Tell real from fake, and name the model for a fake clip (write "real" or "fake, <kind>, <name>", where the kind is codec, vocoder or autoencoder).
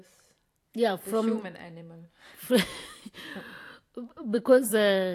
fake, vocoder, BigVGAN v2